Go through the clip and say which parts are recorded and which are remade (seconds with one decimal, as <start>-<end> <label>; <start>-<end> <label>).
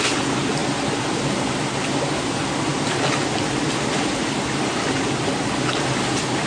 0.0-6.5 recorded